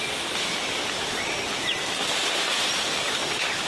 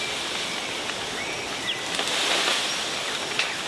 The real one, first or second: second